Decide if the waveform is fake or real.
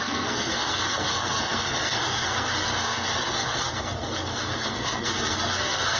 fake